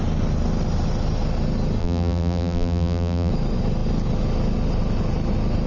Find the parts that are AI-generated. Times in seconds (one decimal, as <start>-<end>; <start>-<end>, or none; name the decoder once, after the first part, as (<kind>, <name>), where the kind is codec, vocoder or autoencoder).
1.8-3.3 (vocoder, BigVGAN v2)